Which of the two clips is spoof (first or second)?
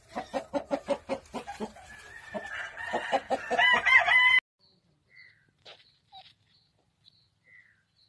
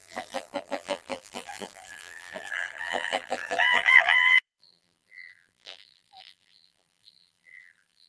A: second